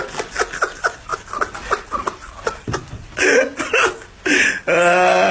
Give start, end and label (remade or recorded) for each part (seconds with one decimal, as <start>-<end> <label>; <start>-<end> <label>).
0.0-5.3 recorded